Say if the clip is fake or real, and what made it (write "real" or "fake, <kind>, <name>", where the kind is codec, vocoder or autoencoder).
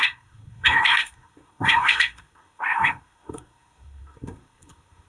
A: fake, codec, SNAC